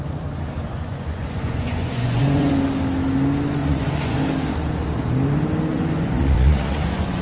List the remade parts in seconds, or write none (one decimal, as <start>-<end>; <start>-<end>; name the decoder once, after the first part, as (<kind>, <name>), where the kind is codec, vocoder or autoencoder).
0.7-2.5 (vocoder, Vocos); 3.6-4.2; 5.7-7.2